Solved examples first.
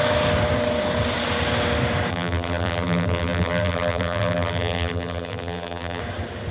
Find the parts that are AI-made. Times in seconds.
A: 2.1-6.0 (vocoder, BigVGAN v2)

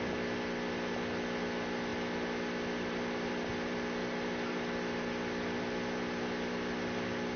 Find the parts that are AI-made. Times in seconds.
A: none